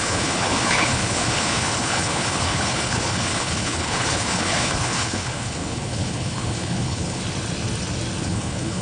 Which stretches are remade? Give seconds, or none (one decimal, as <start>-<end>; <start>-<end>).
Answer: 0.0-7.2; 8.2-8.8